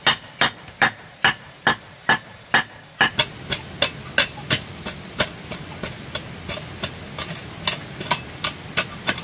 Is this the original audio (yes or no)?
yes